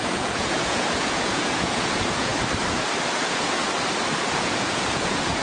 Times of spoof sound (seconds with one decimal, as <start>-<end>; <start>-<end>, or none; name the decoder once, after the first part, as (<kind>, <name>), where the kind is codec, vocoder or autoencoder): 0.0-2.3 (vocoder, Vocos); 3.2-3.6; 4.2-5.4

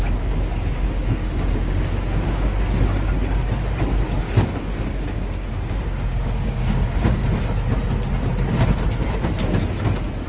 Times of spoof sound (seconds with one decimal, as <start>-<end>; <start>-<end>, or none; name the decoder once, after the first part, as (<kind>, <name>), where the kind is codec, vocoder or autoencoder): 0.0-2.5 (codec, DAC); 4.2-7.2

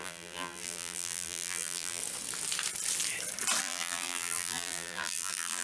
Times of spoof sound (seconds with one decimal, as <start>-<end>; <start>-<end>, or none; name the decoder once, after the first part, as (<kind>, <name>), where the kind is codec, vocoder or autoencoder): 0.0-2.0 (vocoder, BigVGAN v2); 3.6-5.6

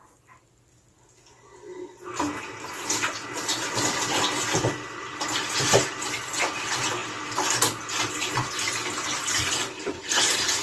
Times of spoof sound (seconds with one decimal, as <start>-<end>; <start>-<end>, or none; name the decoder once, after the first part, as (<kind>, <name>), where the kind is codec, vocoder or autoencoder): none

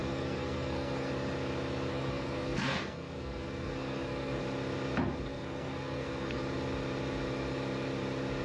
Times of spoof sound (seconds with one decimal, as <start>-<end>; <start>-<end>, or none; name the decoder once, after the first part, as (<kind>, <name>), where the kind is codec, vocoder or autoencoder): 0.0-1.1 (codec, SNAC); 1.9-4.4; 5.3-6.4

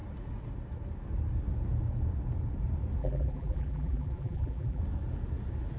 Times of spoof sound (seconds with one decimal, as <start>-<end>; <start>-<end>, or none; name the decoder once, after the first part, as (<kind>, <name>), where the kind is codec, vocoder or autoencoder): 3.0-4.8 (vocoder, BigVGAN v2)

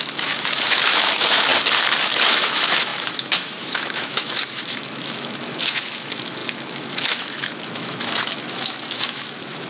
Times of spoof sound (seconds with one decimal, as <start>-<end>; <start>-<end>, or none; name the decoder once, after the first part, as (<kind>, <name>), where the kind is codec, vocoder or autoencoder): 0.0-1.5 (autoencoder, DAC-VAE); 2.0-9.7